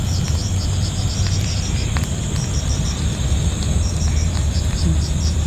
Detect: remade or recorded remade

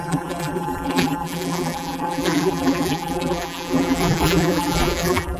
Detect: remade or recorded remade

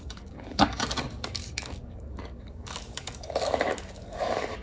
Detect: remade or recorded remade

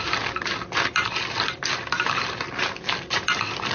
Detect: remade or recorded recorded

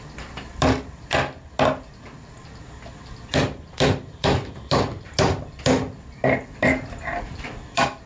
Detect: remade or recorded recorded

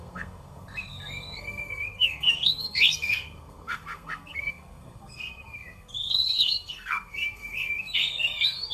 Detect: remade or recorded remade